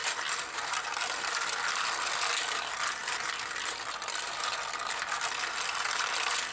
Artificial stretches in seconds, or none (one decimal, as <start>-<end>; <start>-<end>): none